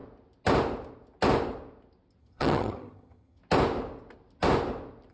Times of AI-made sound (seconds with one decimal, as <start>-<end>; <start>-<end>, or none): 2.2-3.4